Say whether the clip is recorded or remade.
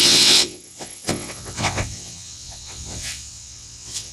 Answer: remade